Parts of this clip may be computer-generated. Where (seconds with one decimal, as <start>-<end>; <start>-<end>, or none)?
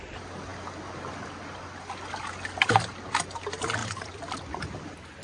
3.8-4.4